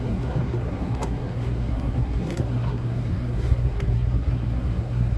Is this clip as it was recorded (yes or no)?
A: no